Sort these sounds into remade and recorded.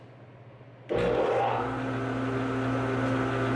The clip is recorded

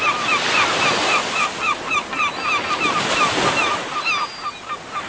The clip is recorded